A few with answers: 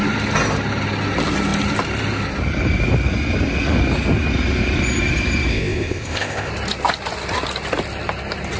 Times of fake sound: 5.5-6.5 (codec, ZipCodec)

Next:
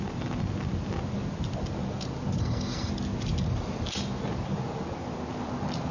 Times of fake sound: 2.4-2.9 (codec, SNAC)

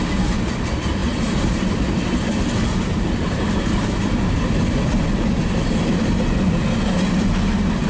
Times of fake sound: none